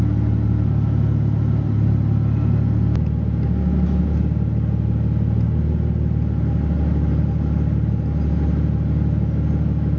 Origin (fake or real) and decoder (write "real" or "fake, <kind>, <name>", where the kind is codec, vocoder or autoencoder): real